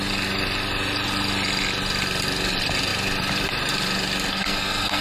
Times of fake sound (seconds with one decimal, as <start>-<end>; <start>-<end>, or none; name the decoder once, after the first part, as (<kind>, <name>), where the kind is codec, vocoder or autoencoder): 4.3-5.0 (codec, SNAC)